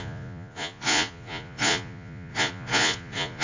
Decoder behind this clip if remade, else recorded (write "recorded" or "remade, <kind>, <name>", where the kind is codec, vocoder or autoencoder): remade, vocoder, Vocos